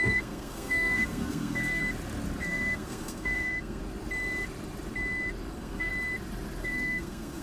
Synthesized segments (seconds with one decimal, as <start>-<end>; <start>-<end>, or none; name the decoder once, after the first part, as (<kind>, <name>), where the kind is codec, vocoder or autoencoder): 0.0-1.8 (codec, SNAC); 2.4-3.8; 5.5-5.9; 6.6-7.4